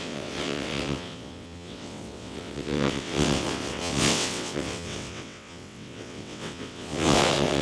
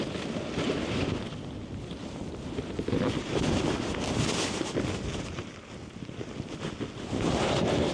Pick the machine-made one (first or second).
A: first